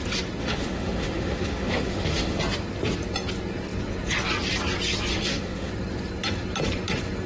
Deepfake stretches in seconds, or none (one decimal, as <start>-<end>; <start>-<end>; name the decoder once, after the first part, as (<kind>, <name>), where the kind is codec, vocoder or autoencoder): 0.4-2.4 (autoencoder, DAC-VAE); 5.1-5.7